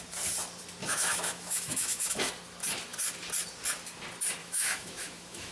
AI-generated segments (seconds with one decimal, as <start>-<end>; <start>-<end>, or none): 0.8-2.3; 4.4-5.5